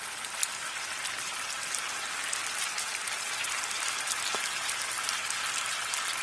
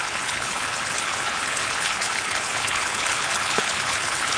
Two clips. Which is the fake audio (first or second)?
second